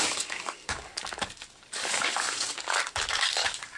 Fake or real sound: fake